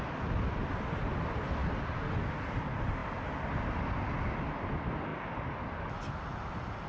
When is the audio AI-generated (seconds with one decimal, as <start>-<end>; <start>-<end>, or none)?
none